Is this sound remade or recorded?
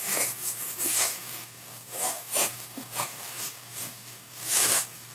remade